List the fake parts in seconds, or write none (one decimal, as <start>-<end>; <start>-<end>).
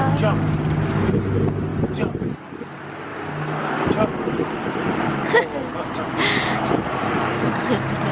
none